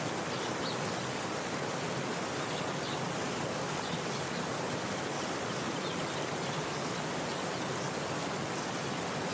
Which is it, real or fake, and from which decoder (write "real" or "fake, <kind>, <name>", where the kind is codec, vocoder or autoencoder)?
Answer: real